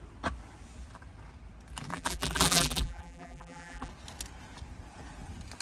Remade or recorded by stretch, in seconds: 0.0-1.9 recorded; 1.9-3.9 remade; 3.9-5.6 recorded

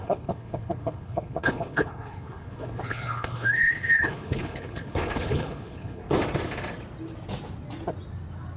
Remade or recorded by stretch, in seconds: 0.0-6.0 remade; 6.0-8.6 recorded